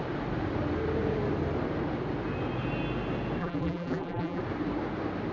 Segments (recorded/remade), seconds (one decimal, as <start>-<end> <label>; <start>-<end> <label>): 0.0-3.4 recorded; 3.4-4.4 remade; 4.4-5.3 recorded